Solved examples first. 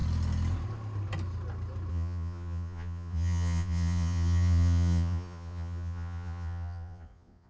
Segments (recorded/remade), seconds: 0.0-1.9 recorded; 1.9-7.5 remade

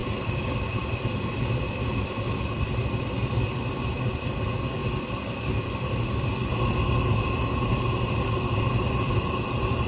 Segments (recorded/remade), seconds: 0.0-9.9 recorded

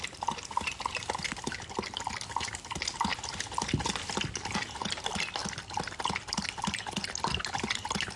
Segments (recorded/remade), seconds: 0.0-8.2 recorded

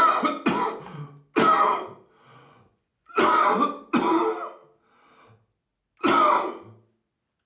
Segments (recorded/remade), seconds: 0.0-2.3 recorded; 2.3-3.2 remade; 3.2-7.5 recorded

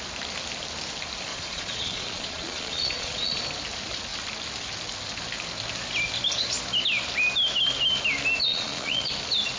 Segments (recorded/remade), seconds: 0.0-1.3 recorded; 1.3-3.4 remade; 3.4-8.5 recorded; 8.5-9.1 remade; 9.1-9.6 recorded